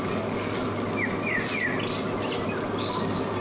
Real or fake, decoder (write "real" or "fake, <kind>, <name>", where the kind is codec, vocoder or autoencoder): real